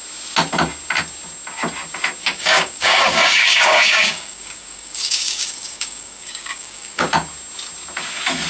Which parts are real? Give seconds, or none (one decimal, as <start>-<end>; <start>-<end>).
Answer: 0.0-2.2; 7.0-8.5